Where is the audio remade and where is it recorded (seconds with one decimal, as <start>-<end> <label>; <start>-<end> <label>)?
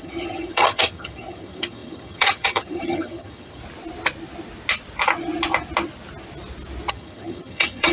0.0-3.6 remade; 3.6-6.9 recorded; 6.9-7.9 remade